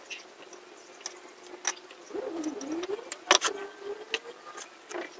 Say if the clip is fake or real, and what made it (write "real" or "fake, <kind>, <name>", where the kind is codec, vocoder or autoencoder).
real